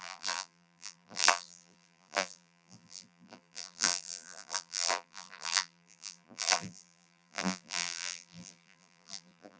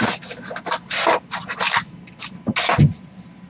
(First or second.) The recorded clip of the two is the second